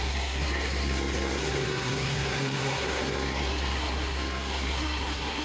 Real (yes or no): no